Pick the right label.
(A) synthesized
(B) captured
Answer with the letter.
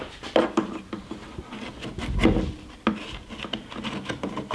B